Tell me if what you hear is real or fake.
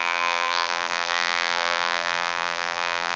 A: fake